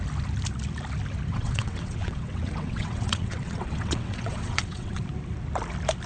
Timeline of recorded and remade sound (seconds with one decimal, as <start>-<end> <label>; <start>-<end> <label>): 0.0-1.3 recorded; 1.3-5.0 remade; 5.0-6.1 recorded